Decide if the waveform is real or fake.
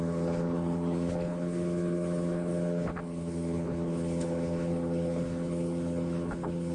fake